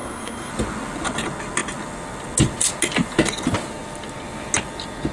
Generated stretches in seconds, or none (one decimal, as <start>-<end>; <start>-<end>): 0.0-0.5